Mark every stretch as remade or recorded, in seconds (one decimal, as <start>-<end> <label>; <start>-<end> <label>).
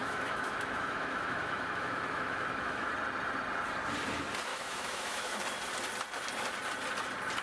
0.0-2.9 remade; 2.9-4.5 recorded; 4.5-5.3 remade; 5.3-7.4 recorded